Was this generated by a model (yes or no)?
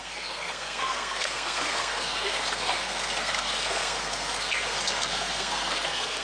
yes